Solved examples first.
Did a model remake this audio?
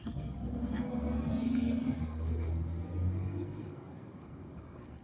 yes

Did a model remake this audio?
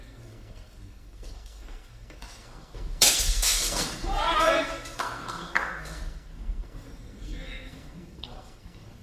yes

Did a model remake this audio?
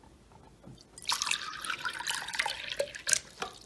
no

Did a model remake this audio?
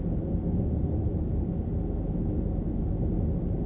no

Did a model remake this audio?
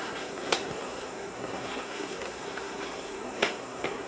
yes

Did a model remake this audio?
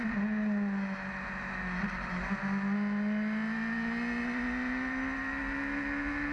no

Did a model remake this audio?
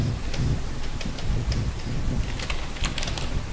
no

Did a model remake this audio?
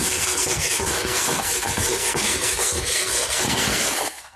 yes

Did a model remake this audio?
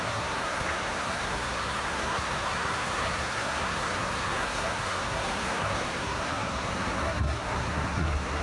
yes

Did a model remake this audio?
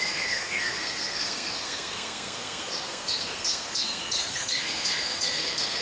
yes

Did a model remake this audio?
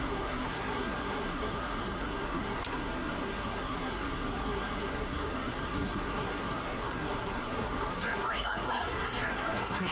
yes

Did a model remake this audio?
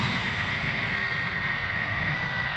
yes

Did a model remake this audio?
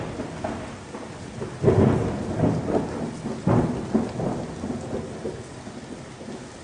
no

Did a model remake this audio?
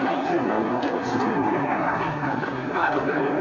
yes